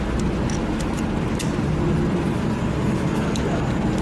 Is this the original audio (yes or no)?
yes